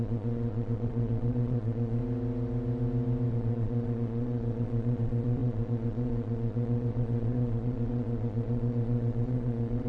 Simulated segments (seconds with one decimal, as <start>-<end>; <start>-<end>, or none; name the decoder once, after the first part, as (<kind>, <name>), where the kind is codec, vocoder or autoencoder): 0.0-2.0 (vocoder, Vocos); 3.3-9.9